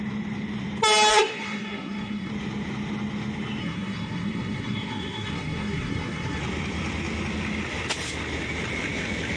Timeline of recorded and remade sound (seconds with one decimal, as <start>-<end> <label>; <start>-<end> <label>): 0.0-1.1 recorded; 1.1-2.3 remade; 2.3-3.6 recorded; 3.6-6.4 remade; 6.4-9.4 recorded